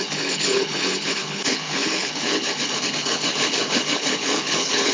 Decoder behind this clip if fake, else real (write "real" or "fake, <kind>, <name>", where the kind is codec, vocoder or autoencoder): fake, codec, HILCodec